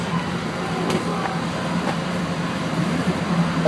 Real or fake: real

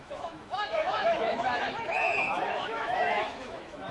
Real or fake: fake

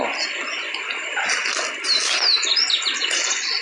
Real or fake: real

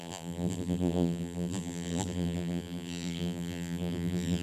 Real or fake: fake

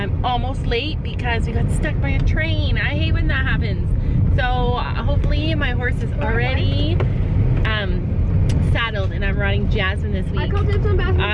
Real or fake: real